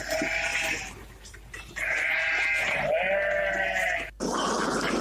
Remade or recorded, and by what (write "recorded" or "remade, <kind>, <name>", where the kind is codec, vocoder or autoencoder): recorded